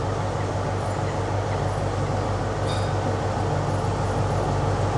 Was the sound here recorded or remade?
recorded